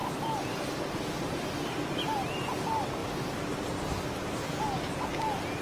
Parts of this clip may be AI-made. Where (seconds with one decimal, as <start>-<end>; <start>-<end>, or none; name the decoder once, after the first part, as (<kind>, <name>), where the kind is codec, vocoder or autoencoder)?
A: none